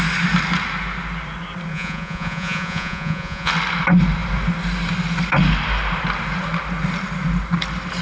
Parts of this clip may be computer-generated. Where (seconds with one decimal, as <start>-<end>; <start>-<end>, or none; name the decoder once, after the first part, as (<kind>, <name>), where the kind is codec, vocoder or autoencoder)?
1.7-3.5 (vocoder, Vocos)